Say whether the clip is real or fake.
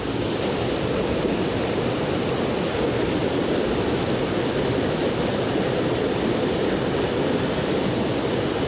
real